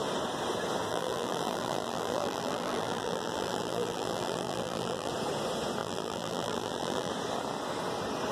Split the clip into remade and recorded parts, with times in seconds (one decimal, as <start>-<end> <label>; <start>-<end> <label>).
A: 0.0-0.9 recorded; 0.9-5.1 remade; 5.1-5.8 recorded; 5.8-7.1 remade; 7.1-8.3 recorded